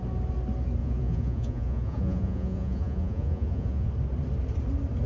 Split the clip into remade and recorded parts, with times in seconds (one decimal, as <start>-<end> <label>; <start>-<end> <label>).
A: 0.0-0.8 recorded; 0.8-3.9 remade; 3.9-5.1 recorded